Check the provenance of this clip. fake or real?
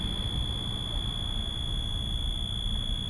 real